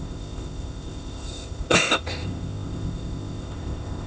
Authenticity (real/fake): fake